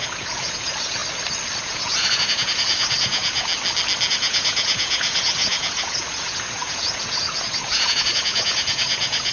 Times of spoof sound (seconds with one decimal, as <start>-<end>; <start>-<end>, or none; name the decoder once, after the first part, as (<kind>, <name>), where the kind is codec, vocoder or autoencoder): 0.0-1.0 (vocoder, Vocos); 1.6-3.5; 4.1-9.3